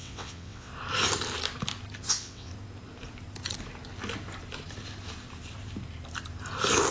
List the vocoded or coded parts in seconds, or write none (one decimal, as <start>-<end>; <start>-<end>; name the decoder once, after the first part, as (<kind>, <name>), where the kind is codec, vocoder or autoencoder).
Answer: 0.0-0.7 (vocoder, WaveNeXt); 2.0-2.5